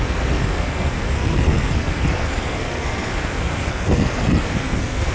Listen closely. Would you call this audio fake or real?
fake